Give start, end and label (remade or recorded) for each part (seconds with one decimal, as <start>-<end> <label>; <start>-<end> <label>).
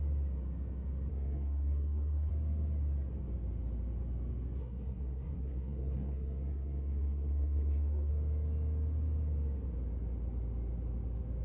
0.0-1.1 recorded; 1.1-2.3 remade; 2.3-4.6 recorded; 4.6-8.1 remade; 8.1-11.4 recorded